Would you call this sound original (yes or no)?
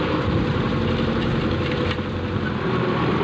yes